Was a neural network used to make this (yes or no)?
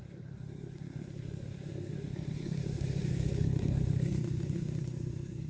yes